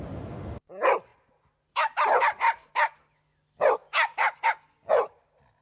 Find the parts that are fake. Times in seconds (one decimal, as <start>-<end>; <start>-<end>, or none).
none

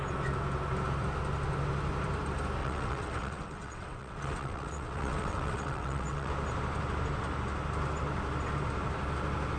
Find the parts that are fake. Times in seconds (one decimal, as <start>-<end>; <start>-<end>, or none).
2.6-6.3

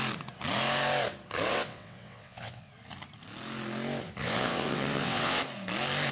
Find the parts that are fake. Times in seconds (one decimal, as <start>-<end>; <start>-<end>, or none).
1.5-2.7; 4.2-5.4

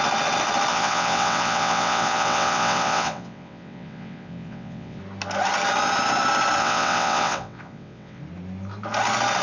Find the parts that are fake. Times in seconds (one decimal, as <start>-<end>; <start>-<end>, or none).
0.7-5.0; 6.6-8.2